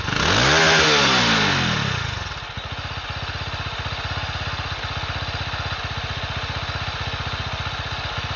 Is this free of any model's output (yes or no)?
yes